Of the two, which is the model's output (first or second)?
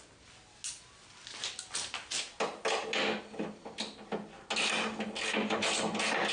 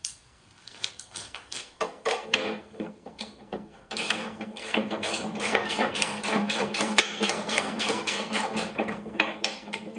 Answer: second